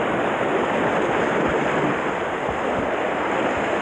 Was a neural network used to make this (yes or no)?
no